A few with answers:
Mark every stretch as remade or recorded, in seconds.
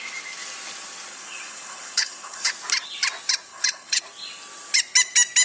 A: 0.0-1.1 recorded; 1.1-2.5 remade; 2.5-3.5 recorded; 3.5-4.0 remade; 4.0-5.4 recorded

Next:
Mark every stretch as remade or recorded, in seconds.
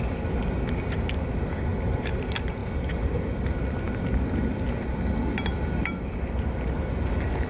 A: 0.0-7.5 recorded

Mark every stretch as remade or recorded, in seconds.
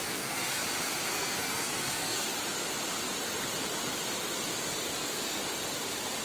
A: 0.0-0.6 remade; 0.6-1.1 recorded; 1.1-2.3 remade; 2.3-5.0 recorded; 5.0-5.4 remade; 5.4-6.2 recorded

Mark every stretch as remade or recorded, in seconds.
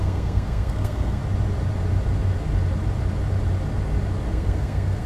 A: 0.0-1.2 remade; 1.2-4.3 recorded; 4.3-5.1 remade